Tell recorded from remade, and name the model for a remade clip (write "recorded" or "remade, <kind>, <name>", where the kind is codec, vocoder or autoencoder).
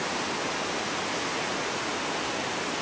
recorded